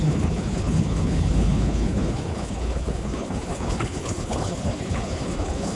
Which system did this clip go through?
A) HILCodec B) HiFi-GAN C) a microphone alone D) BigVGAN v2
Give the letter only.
A